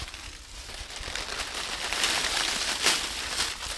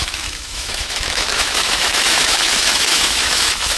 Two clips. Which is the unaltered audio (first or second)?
first